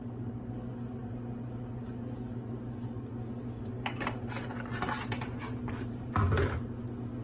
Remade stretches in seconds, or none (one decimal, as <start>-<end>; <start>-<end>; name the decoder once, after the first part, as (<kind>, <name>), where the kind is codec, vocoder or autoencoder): 4.5-6.2 (vocoder, BigVGAN v2)